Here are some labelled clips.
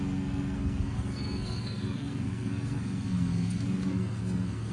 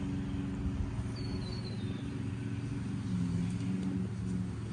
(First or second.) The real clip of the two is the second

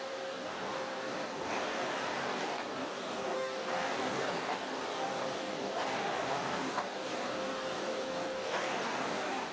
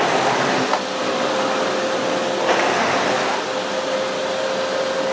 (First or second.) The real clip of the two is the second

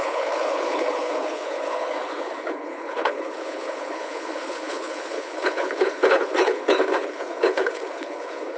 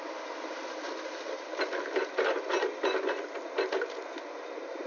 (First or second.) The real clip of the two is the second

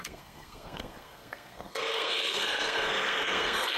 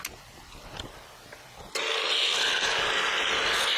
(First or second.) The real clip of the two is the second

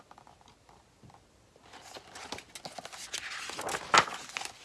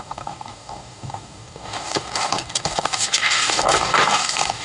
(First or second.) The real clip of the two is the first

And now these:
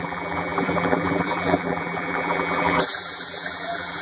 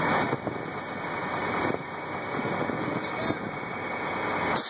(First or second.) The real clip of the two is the second